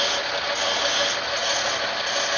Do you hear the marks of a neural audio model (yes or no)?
no